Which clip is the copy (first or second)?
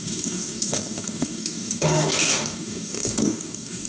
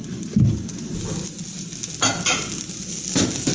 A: first